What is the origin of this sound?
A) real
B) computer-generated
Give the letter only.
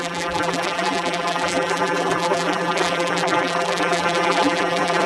B